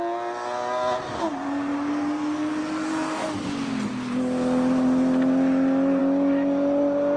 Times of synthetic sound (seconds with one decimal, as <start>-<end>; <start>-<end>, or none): none